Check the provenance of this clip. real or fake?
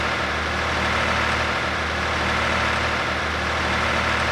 fake